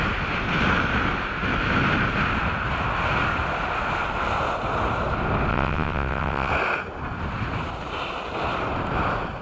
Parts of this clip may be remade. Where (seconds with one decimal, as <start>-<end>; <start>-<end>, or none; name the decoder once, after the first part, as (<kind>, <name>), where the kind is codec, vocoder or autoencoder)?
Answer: 5.5-6.5 (vocoder, WaveNeXt)